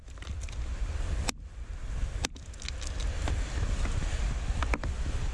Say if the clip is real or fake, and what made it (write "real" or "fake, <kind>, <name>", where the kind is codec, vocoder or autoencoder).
real